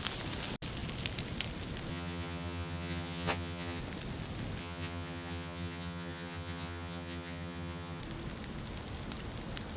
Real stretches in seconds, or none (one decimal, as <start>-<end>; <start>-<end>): 0.0-1.9; 3.8-4.6; 8.0-9.8